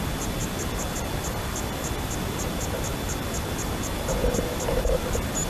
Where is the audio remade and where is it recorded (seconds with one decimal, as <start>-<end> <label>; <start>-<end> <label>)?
0.0-5.5 recorded